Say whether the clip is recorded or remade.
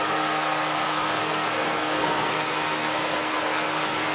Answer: remade